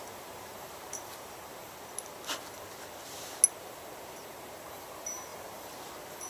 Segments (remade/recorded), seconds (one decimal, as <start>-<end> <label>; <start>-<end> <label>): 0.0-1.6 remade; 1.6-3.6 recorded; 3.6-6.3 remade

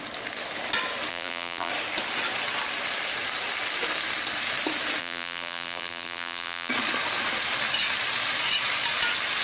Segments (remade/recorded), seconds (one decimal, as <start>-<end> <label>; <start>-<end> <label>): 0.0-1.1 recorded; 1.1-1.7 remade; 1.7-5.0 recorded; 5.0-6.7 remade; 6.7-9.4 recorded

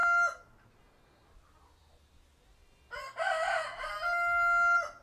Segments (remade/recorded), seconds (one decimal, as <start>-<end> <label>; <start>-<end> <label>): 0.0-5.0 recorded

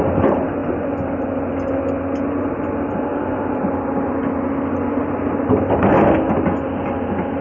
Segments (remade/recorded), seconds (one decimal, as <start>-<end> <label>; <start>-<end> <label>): 0.0-0.6 recorded; 0.6-1.3 remade; 1.3-7.4 recorded

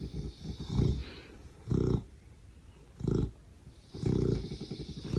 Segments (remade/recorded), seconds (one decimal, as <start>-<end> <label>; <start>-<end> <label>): 0.0-1.0 recorded; 1.0-1.7 remade; 1.7-3.5 recorded; 3.5-4.8 remade; 4.8-5.2 recorded

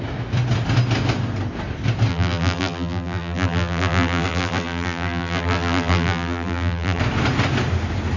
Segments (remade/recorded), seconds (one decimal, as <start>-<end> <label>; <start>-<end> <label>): 0.0-2.1 recorded; 2.1-7.0 remade; 7.0-8.2 recorded